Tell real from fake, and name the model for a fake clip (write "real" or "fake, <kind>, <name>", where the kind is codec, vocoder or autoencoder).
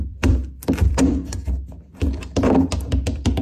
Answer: fake, vocoder, BigVGAN v2